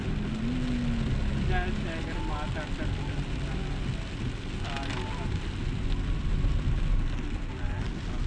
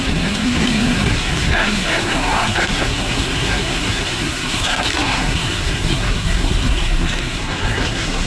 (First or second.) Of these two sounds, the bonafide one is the first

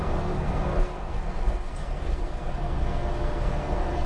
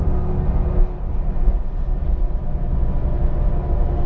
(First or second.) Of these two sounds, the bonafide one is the second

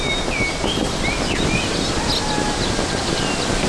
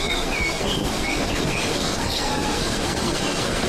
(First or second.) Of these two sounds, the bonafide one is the first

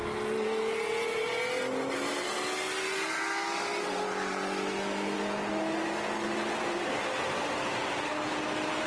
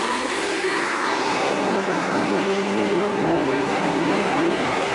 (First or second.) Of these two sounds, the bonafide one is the first